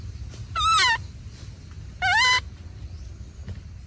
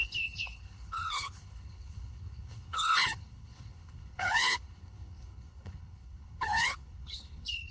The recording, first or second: first